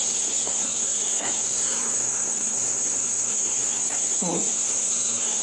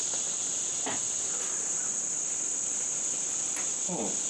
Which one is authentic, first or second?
second